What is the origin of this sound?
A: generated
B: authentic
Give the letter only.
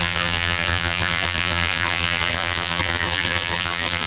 A